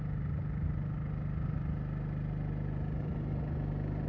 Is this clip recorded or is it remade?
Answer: recorded